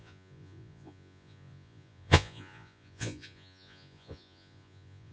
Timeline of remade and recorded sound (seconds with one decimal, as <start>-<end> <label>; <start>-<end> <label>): 0.0-5.1 remade